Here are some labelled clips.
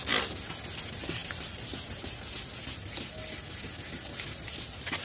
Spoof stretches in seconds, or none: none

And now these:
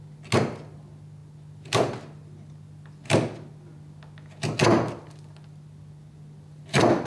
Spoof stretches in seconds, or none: none

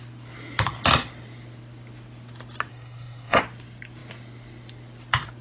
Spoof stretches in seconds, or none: 2.7-3.4